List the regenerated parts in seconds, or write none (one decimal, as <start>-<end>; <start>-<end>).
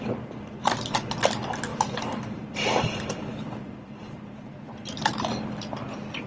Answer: 1.7-5.5